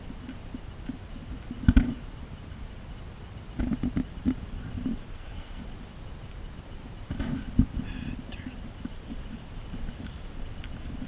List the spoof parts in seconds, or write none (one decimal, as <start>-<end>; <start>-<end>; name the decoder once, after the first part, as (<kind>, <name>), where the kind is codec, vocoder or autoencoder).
5.1-5.6 (codec, SNAC)